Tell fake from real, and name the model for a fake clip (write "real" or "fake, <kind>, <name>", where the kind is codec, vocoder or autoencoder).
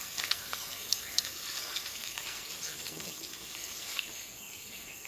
fake, codec, SNAC